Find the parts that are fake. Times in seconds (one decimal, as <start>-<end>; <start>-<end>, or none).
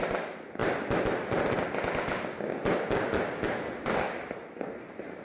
0.0-0.6; 3.7-5.2